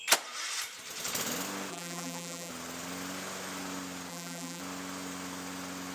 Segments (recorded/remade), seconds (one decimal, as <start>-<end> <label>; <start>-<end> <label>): 0.0-1.7 recorded; 1.7-2.5 remade; 2.5-4.1 recorded; 4.1-4.6 remade; 4.6-5.9 recorded